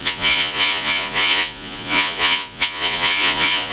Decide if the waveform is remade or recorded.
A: remade